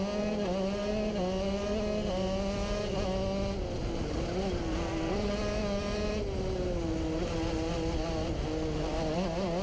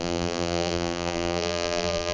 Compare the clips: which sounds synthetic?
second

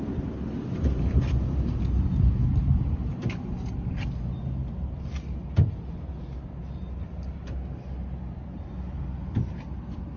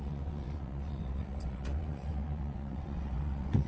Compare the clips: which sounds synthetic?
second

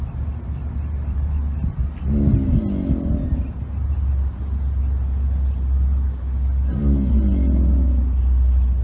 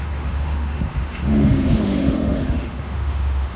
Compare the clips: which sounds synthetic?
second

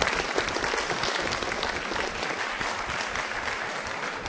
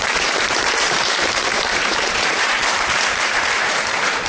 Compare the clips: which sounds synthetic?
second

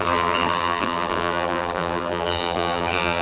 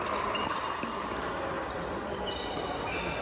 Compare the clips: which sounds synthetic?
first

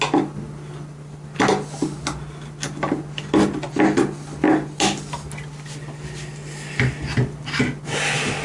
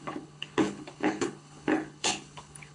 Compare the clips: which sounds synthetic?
second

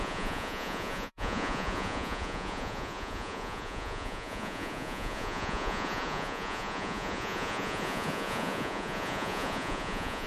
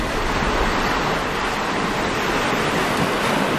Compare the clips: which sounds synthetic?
first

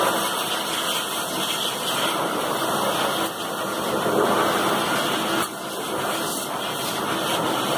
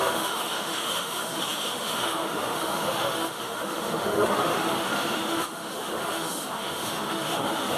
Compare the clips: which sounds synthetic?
second